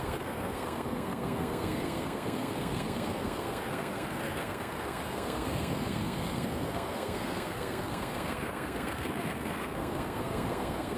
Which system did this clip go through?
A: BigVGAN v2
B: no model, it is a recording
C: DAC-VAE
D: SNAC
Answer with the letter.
D